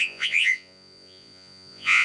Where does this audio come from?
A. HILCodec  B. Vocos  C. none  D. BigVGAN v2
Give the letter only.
B